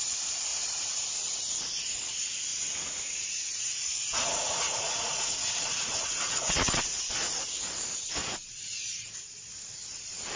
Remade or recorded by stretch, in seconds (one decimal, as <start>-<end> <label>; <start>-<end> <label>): 0.0-0.5 recorded; 0.5-1.5 remade; 1.5-2.5 recorded; 2.5-7.0 remade; 7.0-8.2 recorded; 8.2-8.8 remade; 8.8-10.4 recorded